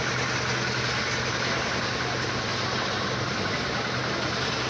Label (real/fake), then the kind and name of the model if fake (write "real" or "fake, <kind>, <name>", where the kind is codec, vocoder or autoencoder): real